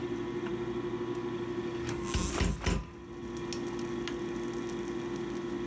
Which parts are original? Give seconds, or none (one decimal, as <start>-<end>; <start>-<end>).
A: 0.0-5.7